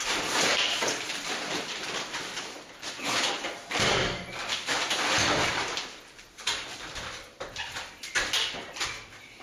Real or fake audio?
fake